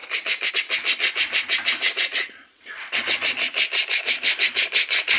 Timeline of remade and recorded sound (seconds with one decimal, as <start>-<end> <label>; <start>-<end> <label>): 0.0-2.1 recorded; 2.1-2.6 remade; 2.6-5.2 recorded